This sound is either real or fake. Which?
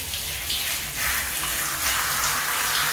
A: real